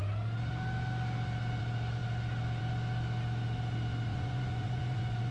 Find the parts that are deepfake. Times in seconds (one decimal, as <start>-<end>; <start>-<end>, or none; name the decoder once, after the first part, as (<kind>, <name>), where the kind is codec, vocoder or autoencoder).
4.1-5.3 (vocoder, Vocos)